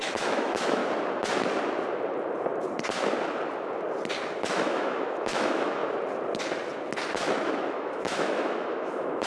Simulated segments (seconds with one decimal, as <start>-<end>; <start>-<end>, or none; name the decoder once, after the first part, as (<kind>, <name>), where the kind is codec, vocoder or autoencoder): 0.0-0.8 (autoencoder, DAC-VAE); 4.4-5.8; 7.6-9.3